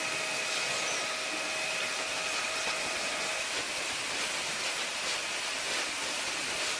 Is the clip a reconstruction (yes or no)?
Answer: no